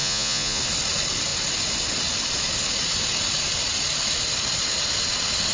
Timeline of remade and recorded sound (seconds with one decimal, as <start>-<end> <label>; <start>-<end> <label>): 0.0-0.6 remade; 0.6-5.5 recorded